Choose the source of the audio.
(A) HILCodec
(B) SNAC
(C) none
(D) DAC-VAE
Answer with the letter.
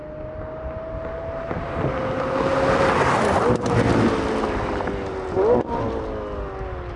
C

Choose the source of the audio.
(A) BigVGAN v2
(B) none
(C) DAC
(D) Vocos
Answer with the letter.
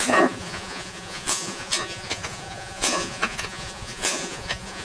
D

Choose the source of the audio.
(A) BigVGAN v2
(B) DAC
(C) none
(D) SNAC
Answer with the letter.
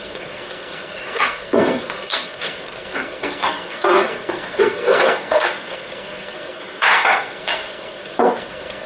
D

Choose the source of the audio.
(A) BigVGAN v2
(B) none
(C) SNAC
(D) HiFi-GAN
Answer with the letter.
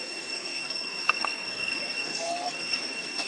C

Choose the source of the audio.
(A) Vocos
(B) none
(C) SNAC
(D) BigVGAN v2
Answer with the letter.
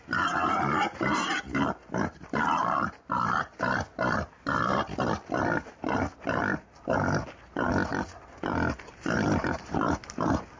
B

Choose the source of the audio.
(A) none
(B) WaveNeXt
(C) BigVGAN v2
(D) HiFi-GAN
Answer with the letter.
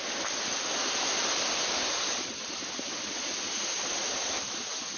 A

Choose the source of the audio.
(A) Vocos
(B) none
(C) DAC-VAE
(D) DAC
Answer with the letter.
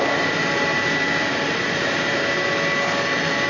B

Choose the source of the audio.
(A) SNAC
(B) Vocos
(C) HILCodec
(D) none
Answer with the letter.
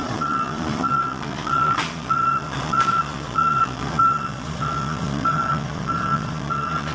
B